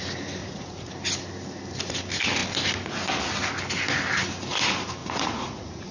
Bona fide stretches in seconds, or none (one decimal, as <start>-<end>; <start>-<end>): 0.0-0.4; 0.9-5.0